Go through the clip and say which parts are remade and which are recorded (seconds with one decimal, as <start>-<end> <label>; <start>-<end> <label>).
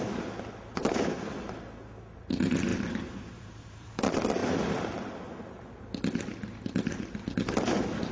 0.0-2.7 recorded; 2.7-4.0 remade; 4.0-8.1 recorded